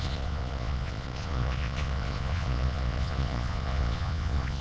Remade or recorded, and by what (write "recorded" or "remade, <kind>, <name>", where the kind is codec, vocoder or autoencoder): remade, vocoder, Vocos